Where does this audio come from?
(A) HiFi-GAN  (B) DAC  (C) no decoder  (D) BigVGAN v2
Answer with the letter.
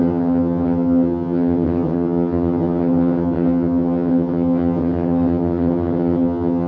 A